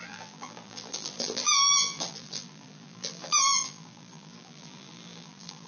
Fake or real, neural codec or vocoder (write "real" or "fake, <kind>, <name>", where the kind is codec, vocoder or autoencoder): fake, vocoder, BigVGAN v2